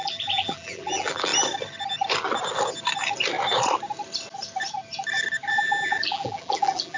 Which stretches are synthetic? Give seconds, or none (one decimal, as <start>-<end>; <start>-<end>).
0.0-1.3; 5.5-7.0